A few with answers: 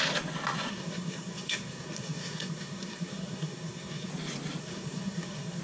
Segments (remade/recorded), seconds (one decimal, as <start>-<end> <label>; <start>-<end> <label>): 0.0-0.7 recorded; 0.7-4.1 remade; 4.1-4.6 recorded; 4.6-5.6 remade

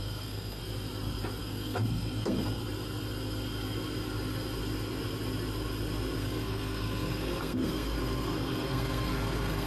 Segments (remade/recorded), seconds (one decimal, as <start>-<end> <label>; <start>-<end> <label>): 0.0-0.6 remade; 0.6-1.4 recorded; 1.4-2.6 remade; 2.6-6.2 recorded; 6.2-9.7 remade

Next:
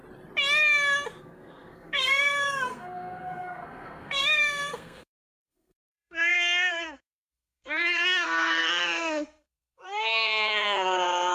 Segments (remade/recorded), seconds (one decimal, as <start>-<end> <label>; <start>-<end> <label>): 0.0-1.2 recorded; 1.2-11.3 remade

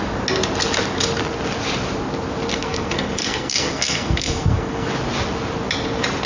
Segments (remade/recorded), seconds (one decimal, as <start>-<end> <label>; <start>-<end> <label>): 0.0-2.5 recorded; 2.5-4.9 remade; 4.9-6.3 recorded

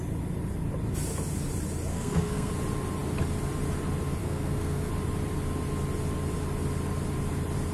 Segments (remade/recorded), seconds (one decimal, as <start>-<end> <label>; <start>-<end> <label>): 0.0-1.9 recorded; 1.9-2.5 remade; 2.5-4.2 recorded; 4.2-4.9 remade; 4.9-7.7 recorded

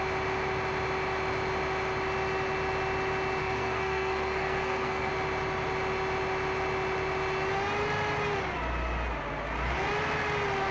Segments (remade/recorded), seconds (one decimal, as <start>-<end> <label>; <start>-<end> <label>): 0.0-3.4 recorded; 3.4-5.1 remade; 5.1-10.7 recorded

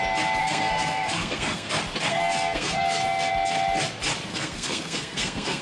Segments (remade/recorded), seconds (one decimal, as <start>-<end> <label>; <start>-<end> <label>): 0.0-0.4 recorded; 0.4-1.7 remade; 1.7-2.1 recorded; 2.1-3.3 remade; 3.3-4.3 recorded; 4.3-5.6 remade